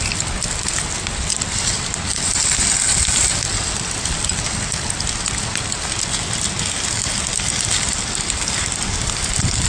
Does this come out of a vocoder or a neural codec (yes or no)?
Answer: no